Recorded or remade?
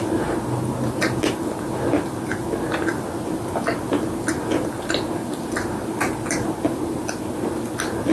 recorded